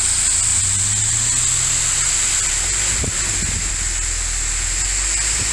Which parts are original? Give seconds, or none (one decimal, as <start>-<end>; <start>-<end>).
0.0-5.5